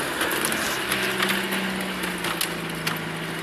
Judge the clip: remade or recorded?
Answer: recorded